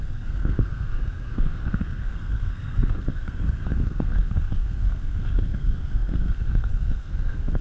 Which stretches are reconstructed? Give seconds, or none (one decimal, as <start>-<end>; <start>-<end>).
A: 0.0-7.6